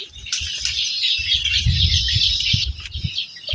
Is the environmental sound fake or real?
real